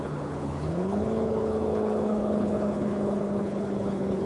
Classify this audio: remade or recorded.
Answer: remade